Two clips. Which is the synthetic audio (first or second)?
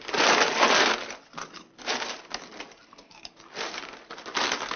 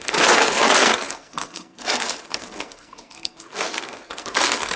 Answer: second